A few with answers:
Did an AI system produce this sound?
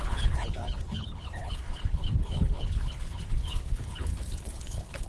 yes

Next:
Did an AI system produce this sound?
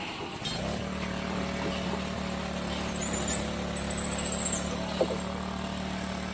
no